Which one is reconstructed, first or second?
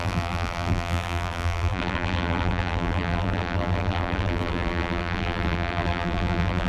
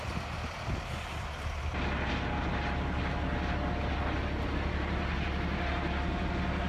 first